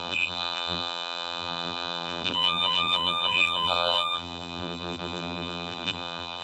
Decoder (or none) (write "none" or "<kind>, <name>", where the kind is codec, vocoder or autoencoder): vocoder, BigVGAN v2